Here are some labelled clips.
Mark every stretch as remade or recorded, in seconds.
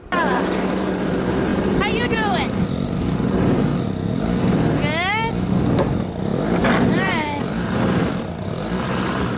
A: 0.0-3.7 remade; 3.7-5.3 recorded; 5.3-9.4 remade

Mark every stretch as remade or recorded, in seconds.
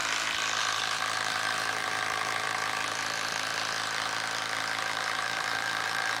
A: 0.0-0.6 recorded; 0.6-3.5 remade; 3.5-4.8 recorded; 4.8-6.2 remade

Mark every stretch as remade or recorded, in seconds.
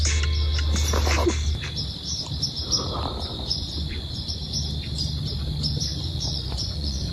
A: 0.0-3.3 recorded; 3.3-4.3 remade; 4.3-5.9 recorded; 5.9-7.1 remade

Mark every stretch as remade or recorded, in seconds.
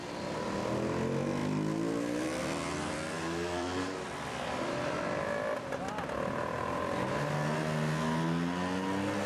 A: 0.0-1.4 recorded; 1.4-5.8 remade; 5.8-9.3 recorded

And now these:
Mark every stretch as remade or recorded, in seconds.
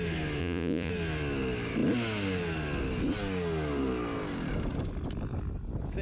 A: 0.0-0.4 recorded; 0.4-0.9 remade; 0.9-6.0 recorded